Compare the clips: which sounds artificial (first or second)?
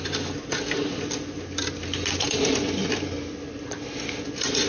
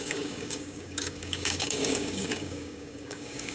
second